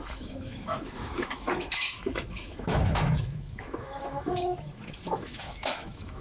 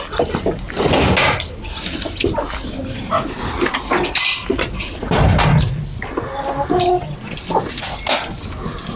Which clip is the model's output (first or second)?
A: first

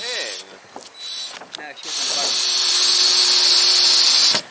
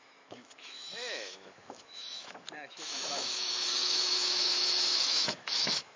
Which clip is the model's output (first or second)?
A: second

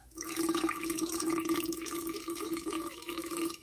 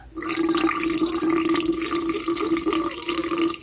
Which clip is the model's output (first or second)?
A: first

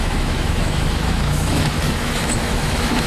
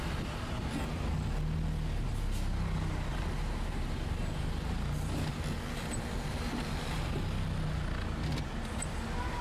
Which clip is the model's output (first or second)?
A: first